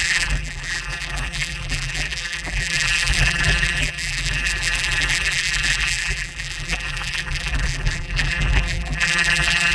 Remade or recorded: remade